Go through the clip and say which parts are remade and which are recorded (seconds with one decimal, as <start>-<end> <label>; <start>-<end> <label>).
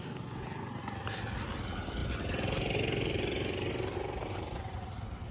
0.0-5.3 recorded